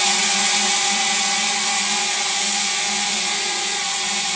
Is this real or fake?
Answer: fake